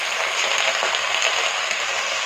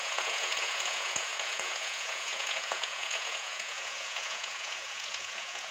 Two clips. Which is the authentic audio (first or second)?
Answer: first